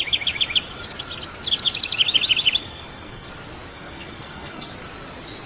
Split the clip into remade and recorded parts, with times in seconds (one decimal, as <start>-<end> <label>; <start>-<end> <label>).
0.0-2.6 recorded; 2.6-3.3 remade; 3.3-3.7 recorded; 3.7-4.7 remade; 4.7-5.5 recorded